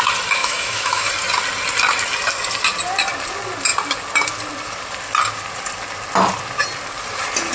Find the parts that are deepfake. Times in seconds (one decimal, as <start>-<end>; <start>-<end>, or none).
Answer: 0.4-1.1